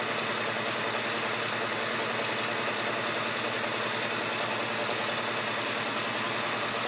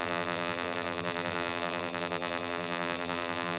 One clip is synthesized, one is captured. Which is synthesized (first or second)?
second